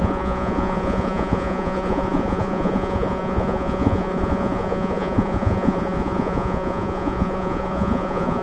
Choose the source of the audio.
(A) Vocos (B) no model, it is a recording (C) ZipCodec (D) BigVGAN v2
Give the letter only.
A